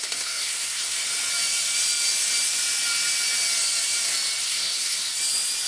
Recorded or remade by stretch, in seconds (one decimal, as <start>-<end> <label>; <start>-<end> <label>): 0.0-1.0 remade; 1.0-4.4 recorded; 4.4-5.1 remade; 5.1-5.7 recorded